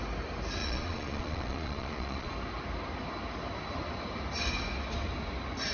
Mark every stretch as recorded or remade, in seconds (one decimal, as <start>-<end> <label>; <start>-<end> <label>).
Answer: 0.0-0.6 recorded; 0.6-2.3 remade; 2.3-5.7 recorded